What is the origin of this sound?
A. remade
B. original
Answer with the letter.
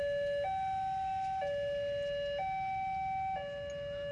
B